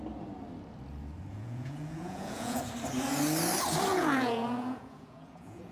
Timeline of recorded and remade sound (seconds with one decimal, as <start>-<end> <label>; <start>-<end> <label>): 0.0-1.3 recorded; 1.3-2.6 remade; 2.6-3.9 recorded; 3.9-5.7 remade